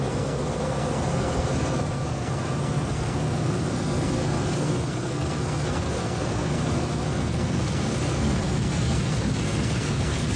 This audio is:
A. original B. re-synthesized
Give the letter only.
B